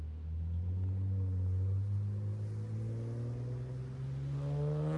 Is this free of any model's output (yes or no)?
yes